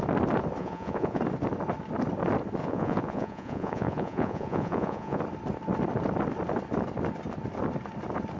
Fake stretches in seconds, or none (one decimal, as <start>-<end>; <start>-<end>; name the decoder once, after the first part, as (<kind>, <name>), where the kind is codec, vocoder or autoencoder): 0.6-1.2 (vocoder, Vocos); 2.6-5.2

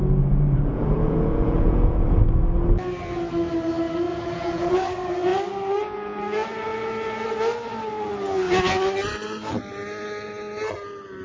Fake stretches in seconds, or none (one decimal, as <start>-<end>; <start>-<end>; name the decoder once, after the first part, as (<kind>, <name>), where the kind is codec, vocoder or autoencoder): 0.0-2.2 (vocoder, Vocos); 4.1-4.7

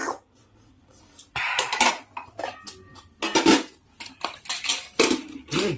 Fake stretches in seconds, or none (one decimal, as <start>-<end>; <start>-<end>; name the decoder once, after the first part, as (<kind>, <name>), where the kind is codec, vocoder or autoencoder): none

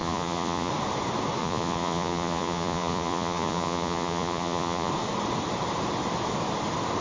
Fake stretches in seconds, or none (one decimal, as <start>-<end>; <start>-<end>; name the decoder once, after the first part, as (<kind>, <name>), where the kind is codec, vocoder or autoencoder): 0.0-0.7 (vocoder, Vocos); 1.4-4.9